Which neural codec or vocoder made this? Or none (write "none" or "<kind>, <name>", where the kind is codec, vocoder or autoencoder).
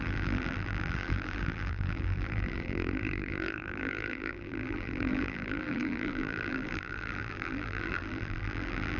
vocoder, BigVGAN v2